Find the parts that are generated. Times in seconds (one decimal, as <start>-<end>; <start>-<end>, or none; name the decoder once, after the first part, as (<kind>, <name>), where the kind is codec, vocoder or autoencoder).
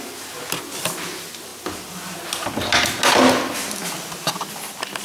none